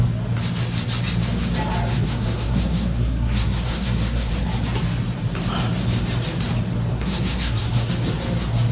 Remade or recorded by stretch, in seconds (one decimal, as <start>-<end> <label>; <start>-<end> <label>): 0.0-1.9 recorded; 1.9-4.3 remade; 4.3-6.9 recorded; 6.9-7.9 remade; 7.9-8.7 recorded